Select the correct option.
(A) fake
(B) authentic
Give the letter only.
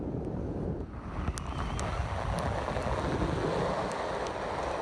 B